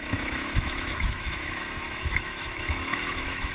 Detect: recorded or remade remade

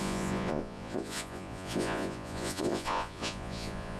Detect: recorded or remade remade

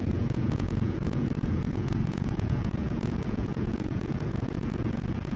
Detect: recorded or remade remade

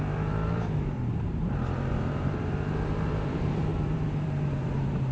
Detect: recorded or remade remade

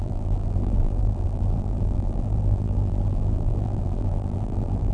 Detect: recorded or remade remade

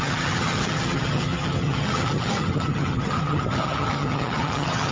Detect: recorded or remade remade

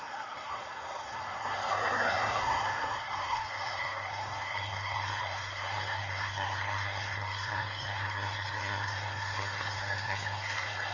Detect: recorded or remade remade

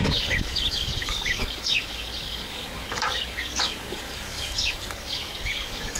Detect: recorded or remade remade